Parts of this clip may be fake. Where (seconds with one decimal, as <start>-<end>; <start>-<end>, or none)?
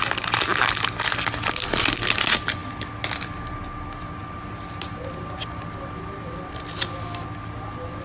none